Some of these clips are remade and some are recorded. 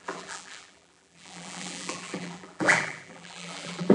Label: remade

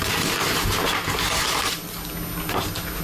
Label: recorded